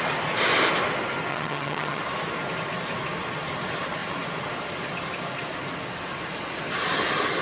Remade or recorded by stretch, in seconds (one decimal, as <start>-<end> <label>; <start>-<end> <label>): 0.0-1.3 recorded; 1.3-2.0 remade; 2.0-7.4 recorded